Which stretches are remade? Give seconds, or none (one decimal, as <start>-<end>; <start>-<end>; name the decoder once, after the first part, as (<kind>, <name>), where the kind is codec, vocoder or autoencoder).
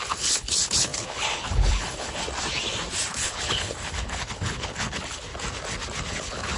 0.0-2.2 (codec, HILCodec); 3.1-5.3; 6.1-6.6